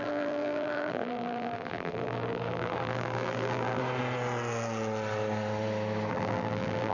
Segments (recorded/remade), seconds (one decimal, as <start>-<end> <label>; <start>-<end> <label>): 0.0-3.8 remade; 3.8-6.1 recorded; 6.1-6.9 remade